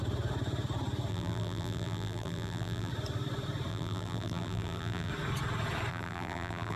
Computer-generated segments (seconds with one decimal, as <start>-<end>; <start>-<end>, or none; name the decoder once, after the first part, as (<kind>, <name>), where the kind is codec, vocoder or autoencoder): 1.1-2.9 (vocoder, BigVGAN v2); 3.7-5.1; 5.9-6.8